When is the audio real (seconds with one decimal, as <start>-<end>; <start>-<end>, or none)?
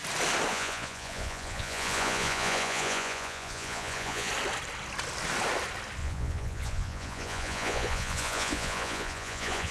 0.0-0.5; 4.3-6.0